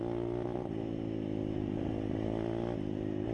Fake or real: real